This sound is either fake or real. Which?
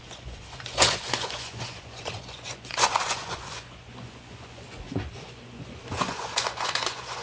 fake